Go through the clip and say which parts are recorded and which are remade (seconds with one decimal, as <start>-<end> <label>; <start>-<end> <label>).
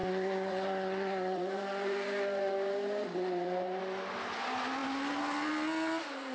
0.0-3.8 remade; 3.8-6.3 recorded